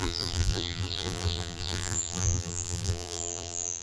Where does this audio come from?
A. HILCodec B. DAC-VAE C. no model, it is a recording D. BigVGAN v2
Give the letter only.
D